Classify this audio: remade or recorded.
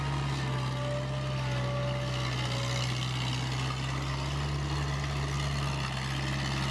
recorded